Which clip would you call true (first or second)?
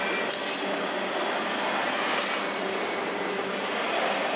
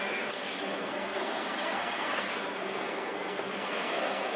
first